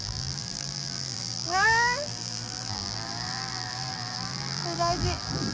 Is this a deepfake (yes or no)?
yes